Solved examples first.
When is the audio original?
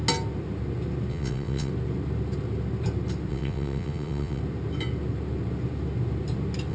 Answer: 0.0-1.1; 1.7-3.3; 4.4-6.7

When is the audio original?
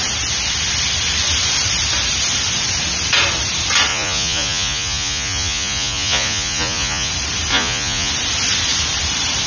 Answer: 0.0-3.9; 7.1-7.5; 8.1-9.5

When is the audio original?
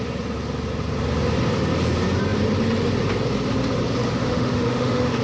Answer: 0.0-4.2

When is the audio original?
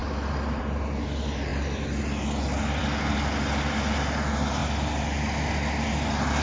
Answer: 0.0-6.4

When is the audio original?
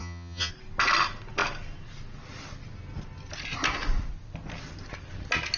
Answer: 0.5-5.6